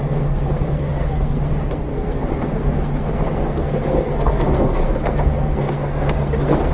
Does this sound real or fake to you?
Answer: fake